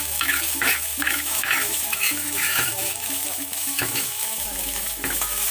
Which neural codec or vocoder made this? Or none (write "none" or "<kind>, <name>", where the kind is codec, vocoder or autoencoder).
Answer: autoencoder, DAC-VAE